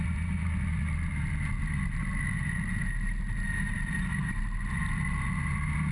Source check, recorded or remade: recorded